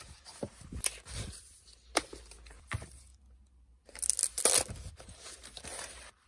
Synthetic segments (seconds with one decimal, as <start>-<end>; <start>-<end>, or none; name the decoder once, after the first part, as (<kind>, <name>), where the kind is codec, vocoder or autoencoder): 0.0-0.7 (vocoder, BigVGAN v2); 1.6-3.1; 4.9-6.3